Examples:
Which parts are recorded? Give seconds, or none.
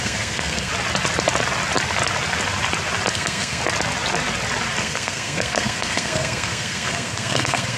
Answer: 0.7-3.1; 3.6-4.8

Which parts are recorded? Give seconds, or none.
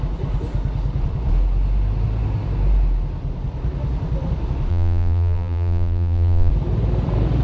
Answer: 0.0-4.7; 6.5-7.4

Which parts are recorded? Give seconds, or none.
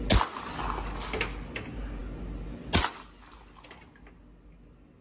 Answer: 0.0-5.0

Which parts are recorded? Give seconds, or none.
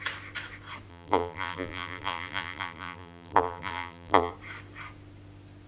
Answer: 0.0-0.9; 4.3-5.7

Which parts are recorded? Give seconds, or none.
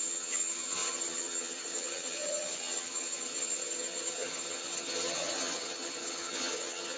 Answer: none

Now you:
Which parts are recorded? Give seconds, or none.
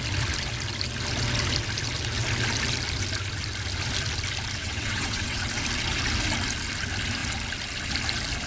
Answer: 0.0-4.6; 5.4-8.5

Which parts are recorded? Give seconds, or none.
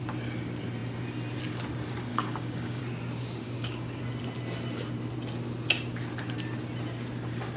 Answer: 0.0-2.1; 2.8-3.4; 4.0-7.6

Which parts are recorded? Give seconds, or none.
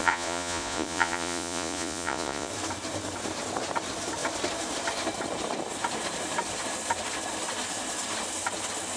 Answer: 2.5-9.0